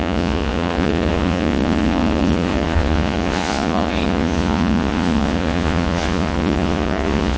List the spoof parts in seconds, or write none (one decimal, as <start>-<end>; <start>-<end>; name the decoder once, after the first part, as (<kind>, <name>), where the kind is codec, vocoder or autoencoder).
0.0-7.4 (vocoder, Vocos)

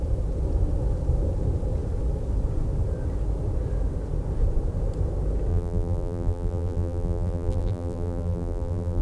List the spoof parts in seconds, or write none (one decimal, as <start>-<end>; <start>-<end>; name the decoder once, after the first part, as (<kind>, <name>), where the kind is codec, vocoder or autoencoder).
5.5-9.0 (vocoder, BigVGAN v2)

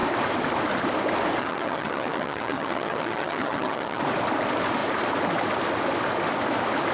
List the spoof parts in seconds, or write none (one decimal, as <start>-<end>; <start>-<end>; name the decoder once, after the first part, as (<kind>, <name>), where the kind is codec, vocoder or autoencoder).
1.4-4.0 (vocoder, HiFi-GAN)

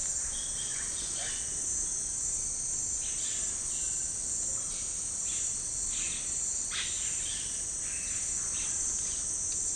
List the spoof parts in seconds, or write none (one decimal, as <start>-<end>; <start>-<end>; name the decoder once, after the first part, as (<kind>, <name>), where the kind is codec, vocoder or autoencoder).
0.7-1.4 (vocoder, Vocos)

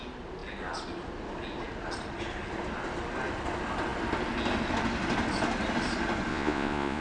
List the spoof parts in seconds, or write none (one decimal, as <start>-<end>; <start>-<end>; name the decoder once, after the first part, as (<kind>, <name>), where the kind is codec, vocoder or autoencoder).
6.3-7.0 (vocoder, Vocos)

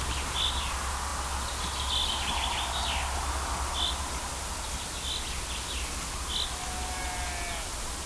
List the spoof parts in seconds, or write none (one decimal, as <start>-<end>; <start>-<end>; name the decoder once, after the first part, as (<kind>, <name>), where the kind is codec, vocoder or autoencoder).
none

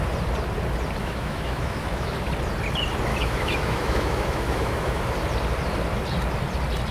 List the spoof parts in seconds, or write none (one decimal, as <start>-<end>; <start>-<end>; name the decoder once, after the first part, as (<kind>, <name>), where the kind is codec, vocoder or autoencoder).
1.0-2.3 (autoencoder, DAC-VAE); 3.1-5.0

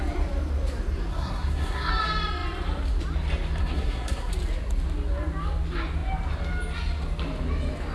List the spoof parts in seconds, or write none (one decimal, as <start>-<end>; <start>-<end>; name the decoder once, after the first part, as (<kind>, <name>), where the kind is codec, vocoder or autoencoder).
1.1-1.9 (codec, SNAC); 3.6-4.3